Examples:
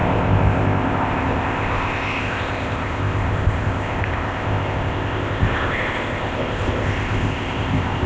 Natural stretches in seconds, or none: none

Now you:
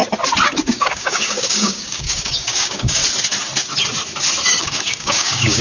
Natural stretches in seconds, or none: 0.0-0.7; 3.0-4.6

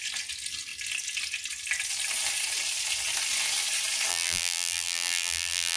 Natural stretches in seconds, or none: 0.0-4.1

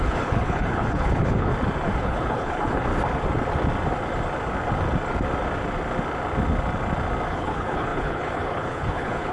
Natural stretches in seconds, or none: 1.5-2.0; 2.9-7.3